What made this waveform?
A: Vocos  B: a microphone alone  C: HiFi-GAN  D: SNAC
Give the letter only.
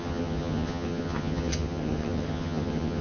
C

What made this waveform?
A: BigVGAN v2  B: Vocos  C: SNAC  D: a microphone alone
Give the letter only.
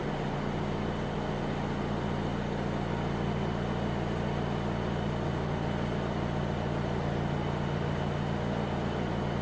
D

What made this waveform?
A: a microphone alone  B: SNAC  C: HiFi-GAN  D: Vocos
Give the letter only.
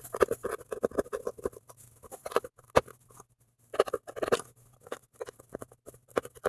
A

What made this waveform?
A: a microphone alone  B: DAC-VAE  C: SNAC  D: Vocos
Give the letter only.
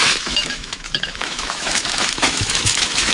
B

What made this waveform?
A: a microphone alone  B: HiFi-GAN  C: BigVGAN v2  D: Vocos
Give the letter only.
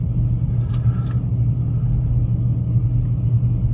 A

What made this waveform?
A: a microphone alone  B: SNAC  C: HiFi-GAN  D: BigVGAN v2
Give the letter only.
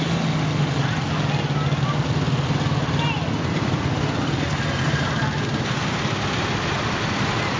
A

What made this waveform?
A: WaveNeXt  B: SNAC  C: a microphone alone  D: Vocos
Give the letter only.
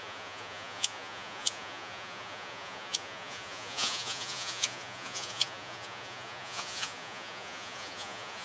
D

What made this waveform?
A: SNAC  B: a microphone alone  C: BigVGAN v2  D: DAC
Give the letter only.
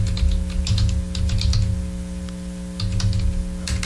B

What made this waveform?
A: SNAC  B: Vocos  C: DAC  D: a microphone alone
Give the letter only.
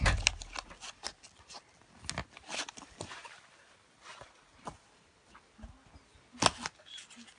D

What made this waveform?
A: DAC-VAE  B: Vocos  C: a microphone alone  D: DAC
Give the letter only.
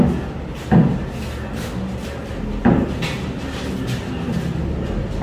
C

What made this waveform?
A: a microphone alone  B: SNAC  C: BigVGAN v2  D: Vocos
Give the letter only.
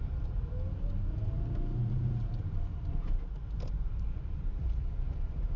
C